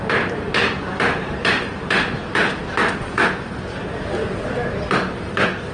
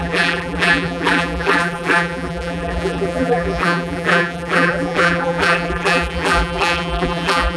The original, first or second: first